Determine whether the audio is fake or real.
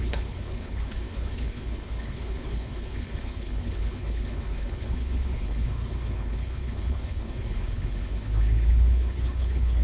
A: fake